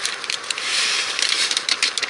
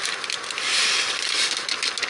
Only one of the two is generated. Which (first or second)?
first